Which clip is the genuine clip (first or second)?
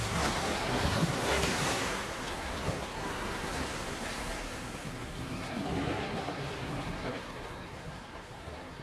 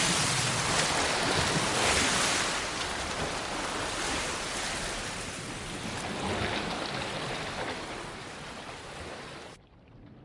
second